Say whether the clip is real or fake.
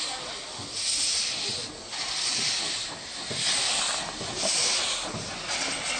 real